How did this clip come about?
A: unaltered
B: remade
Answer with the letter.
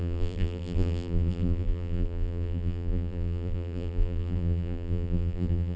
B